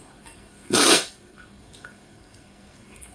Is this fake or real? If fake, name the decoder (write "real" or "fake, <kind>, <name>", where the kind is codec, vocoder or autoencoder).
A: fake, codec, SNAC